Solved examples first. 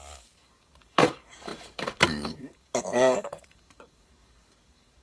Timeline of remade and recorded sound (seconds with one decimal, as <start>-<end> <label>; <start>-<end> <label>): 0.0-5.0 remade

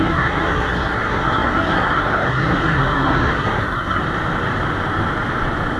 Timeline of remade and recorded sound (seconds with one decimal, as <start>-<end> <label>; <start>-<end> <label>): 0.0-4.0 remade; 4.0-5.8 recorded

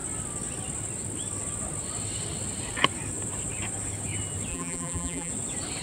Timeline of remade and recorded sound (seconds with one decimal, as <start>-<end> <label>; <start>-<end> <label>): 0.0-4.5 recorded; 4.5-5.3 remade; 5.3-5.8 recorded

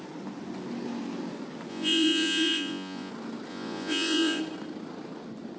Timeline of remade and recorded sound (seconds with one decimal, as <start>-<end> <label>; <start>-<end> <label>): 0.0-1.7 recorded; 1.7-3.1 remade; 3.1-3.5 recorded; 3.5-4.4 remade; 4.4-5.6 recorded